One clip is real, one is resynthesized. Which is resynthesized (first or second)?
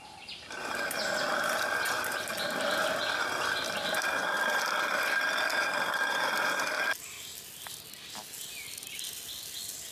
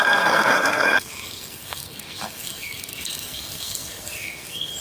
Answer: second